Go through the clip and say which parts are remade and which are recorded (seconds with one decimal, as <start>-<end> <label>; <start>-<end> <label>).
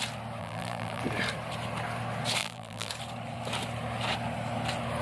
0.0-0.4 recorded; 0.4-1.0 remade; 1.0-2.4 recorded; 2.4-2.9 remade; 2.9-5.0 recorded